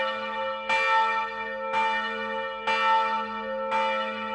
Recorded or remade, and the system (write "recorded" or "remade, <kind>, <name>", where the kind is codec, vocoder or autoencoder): recorded